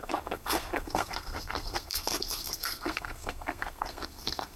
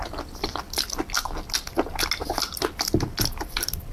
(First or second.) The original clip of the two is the second